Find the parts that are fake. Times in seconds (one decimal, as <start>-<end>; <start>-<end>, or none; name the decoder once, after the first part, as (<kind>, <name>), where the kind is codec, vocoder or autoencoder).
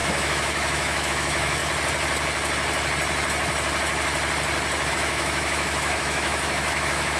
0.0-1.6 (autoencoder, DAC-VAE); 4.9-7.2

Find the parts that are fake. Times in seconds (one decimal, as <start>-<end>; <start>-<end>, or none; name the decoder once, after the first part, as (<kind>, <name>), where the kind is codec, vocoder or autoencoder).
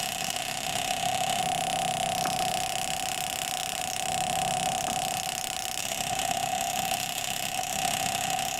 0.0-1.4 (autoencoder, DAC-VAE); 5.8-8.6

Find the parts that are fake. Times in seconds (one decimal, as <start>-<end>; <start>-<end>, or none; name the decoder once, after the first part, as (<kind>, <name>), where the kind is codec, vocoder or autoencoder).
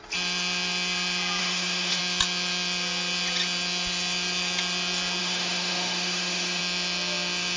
1.4-2.0 (autoencoder, DAC-VAE); 5.2-6.6